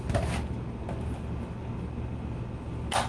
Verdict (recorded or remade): recorded